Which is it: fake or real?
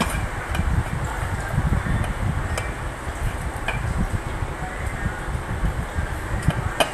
real